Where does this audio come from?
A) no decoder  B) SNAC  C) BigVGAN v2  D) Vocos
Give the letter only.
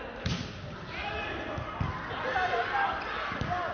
A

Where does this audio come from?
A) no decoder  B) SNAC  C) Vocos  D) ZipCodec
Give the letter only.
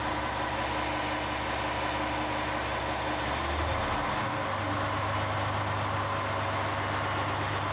A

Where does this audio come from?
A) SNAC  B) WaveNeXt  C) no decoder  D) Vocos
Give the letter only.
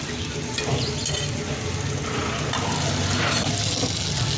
C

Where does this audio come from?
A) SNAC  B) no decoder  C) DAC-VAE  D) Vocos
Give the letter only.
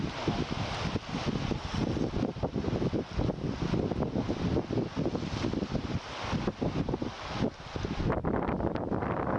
B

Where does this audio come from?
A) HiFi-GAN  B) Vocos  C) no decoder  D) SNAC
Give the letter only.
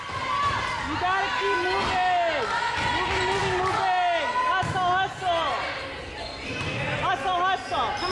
C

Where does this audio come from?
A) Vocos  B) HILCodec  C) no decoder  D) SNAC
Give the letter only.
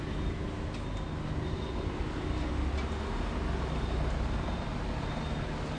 C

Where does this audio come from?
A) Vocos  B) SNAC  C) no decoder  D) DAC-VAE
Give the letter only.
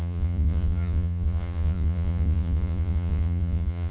A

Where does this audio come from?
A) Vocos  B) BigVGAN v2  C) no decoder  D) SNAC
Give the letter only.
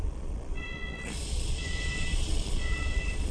A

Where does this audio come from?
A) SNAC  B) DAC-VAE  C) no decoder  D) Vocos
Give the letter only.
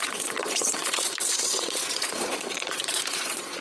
D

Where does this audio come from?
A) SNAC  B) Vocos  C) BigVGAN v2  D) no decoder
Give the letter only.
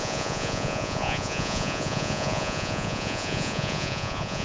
B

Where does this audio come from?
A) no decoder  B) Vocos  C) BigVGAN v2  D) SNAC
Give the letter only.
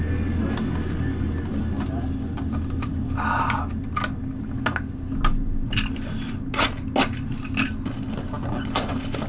A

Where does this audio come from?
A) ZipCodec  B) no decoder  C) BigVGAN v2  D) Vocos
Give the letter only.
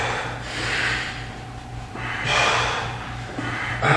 B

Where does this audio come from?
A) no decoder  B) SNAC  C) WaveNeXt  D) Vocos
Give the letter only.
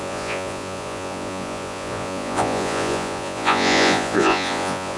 D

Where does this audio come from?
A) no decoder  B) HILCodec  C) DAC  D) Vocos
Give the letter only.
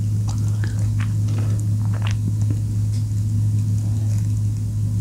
A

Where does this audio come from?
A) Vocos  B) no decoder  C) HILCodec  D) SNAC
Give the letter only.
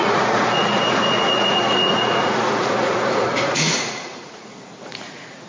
A